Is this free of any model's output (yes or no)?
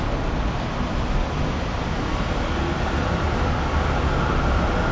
yes